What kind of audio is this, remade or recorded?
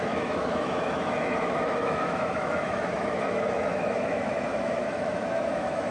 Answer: remade